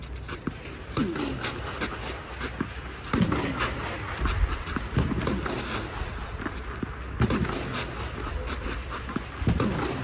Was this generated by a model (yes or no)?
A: no